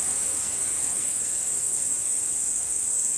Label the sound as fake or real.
fake